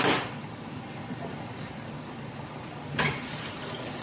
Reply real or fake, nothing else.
fake